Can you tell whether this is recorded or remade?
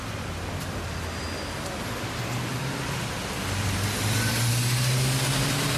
recorded